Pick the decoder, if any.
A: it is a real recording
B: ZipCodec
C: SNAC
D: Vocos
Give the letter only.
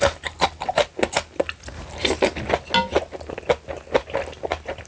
A